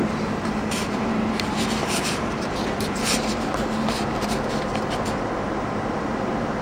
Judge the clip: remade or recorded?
remade